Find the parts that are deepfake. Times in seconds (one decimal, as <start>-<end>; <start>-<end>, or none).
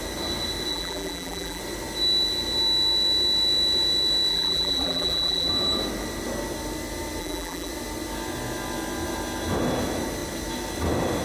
0.7-1.6; 4.3-5.5; 7.2-7.7